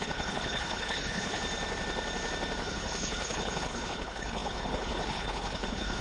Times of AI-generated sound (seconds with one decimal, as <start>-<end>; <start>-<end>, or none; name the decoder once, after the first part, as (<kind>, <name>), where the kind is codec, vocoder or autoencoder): 0.0-1.4 (codec, HILCodec); 2.6-6.0